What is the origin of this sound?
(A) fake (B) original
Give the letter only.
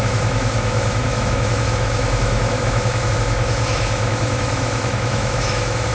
A